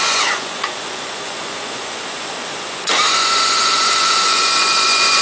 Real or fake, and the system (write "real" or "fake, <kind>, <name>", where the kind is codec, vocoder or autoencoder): fake, vocoder, Vocos